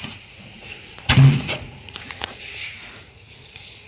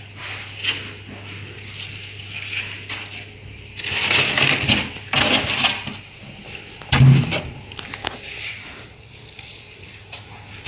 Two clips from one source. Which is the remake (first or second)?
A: first